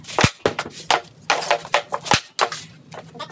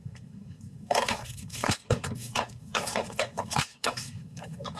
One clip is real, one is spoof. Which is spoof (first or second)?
second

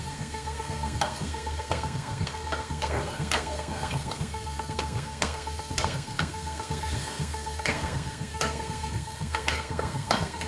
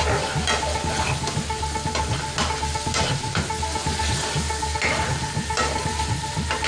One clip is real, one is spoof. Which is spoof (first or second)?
first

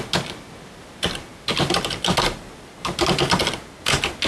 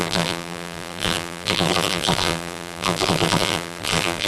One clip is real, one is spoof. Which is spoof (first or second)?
second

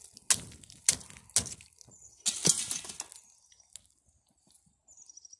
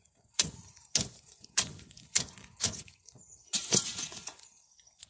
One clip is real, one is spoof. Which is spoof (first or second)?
second